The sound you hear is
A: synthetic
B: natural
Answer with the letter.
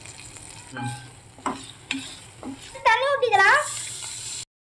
B